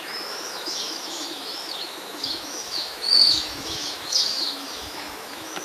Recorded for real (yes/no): no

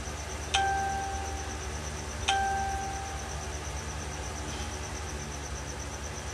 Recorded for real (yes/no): yes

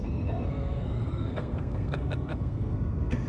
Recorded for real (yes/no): no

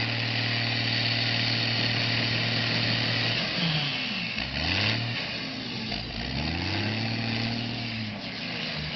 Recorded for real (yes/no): yes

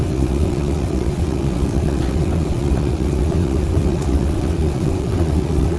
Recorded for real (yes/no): no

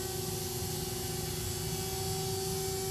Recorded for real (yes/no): yes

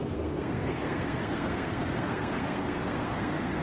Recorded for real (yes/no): no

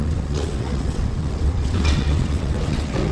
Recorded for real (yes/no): no